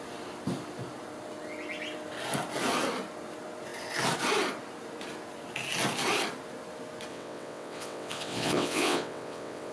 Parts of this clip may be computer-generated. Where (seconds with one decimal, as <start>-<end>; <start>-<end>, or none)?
7.1-9.7